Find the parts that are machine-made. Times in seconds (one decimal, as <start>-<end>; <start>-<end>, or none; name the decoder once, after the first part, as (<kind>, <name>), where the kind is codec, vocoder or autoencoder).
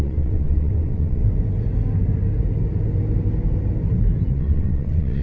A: 0.0-1.2 (vocoder, WaveNeXt); 4.3-5.2